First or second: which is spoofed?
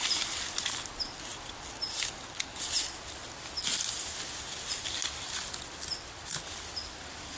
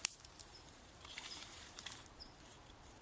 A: second